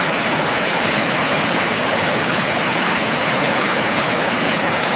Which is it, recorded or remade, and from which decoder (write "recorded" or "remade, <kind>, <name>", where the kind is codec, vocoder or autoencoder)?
remade, codec, HILCodec